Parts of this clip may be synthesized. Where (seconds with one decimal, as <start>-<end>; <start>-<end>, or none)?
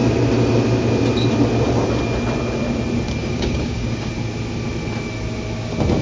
3.2-4.1